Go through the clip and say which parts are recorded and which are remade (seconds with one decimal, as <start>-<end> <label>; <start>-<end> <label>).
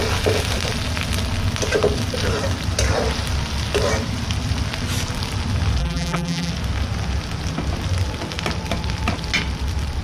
0.0-5.8 recorded; 5.8-6.5 remade; 6.5-10.0 recorded